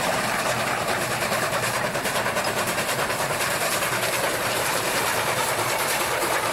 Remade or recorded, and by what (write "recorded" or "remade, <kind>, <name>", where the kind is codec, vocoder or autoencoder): remade, vocoder, BigVGAN v2